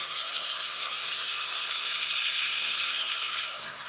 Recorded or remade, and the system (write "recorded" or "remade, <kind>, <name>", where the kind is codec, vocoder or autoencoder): remade, codec, SNAC